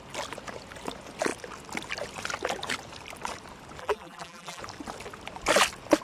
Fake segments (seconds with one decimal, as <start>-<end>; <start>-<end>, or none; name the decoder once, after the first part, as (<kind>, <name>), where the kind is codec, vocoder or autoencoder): 3.8-4.6 (vocoder, BigVGAN v2)